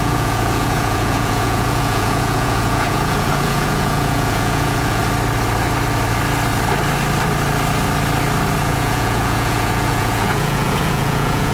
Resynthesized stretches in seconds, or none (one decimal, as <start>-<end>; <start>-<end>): 0.0-5.0; 8.6-11.5

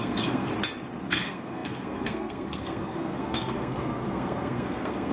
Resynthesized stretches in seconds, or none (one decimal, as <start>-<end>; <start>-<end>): 0.0-0.5; 1.1-5.1

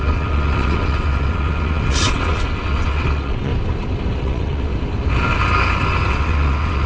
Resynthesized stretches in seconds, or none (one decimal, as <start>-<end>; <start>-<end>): 0.0-3.5; 4.2-4.7; 6.1-6.9

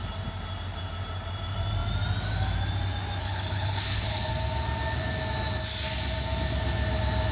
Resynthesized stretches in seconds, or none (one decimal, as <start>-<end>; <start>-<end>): 3.2-4.3

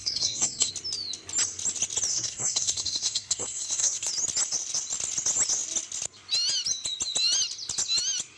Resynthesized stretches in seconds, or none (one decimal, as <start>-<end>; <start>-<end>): 0.0-0.7; 2.1-4.1

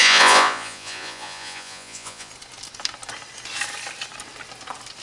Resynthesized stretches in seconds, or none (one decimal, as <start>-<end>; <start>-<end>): 0.0-2.3